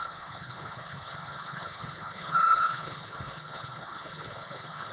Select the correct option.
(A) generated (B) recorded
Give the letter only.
A